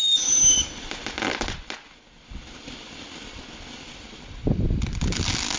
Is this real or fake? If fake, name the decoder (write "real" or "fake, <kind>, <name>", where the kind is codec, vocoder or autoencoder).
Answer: real